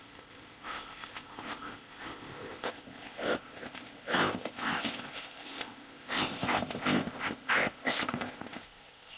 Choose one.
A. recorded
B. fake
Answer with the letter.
B